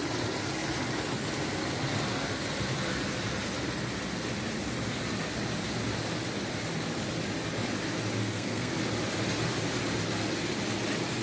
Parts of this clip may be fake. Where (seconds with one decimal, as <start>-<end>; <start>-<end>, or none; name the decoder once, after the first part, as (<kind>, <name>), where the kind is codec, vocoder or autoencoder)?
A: 8.2-8.7 (codec, SNAC)